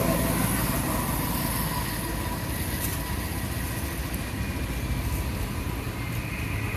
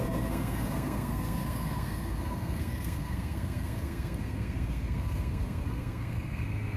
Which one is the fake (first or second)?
second